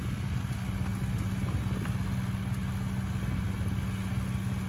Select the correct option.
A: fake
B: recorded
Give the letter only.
B